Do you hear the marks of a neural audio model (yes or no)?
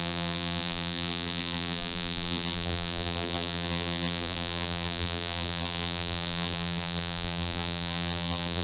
yes